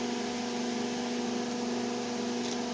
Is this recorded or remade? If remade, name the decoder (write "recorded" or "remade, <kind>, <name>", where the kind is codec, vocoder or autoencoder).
recorded